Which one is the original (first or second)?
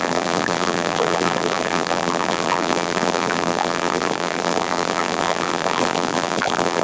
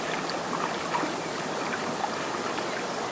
second